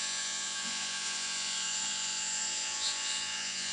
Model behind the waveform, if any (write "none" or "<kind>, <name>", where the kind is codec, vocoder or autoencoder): vocoder, Vocos